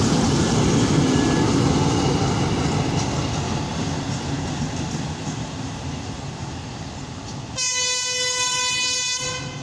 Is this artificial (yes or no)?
no